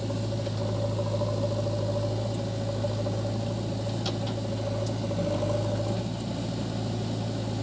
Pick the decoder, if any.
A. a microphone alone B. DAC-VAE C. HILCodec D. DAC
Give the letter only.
A